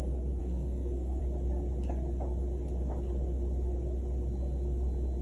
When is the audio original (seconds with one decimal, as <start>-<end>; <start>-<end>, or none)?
0.0-0.4; 1.2-5.2